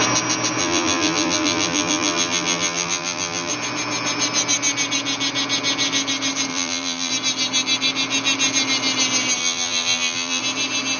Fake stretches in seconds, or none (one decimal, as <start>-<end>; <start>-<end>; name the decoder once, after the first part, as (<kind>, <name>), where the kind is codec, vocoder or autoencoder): 0.6-3.5 (vocoder, BigVGAN v2); 6.5-7.1; 9.4-10.4